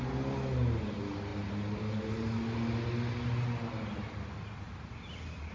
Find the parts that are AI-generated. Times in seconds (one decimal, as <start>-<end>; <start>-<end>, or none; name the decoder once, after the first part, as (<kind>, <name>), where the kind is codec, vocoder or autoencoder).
none